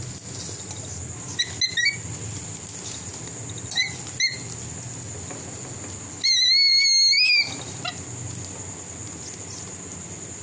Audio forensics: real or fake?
real